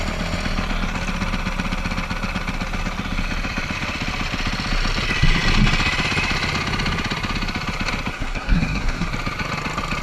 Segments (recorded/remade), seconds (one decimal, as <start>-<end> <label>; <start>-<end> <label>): 0.0-8.1 recorded; 8.1-9.1 remade; 9.1-10.0 recorded